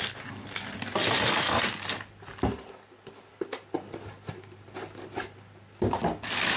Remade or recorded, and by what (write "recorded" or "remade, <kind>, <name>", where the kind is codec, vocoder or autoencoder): recorded